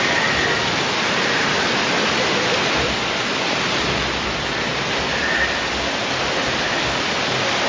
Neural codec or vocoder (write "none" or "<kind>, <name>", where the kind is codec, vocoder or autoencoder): none